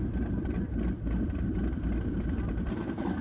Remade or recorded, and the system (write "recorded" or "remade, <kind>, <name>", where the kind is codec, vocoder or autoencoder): recorded